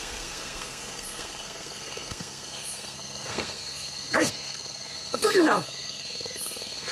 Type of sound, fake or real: fake